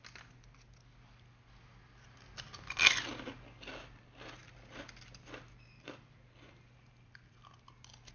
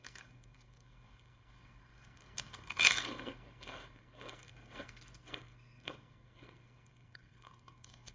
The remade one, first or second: second